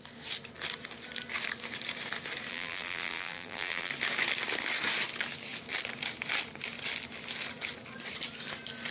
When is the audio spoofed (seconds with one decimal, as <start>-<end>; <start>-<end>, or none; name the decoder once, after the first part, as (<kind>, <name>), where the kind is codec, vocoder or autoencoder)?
2.5-3.9 (vocoder, BigVGAN v2)